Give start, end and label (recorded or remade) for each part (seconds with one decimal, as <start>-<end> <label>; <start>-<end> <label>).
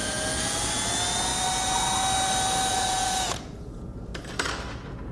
0.0-1.3 remade; 1.3-2.7 recorded; 2.7-4.1 remade; 4.1-5.1 recorded